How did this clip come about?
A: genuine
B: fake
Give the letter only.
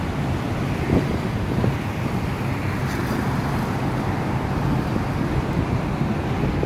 A